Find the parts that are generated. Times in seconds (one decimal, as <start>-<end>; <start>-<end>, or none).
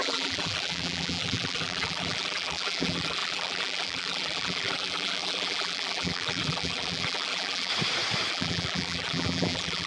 0.0-7.7; 8.3-9.9